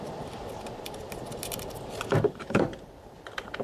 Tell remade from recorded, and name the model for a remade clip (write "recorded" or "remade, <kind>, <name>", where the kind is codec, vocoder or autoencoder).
recorded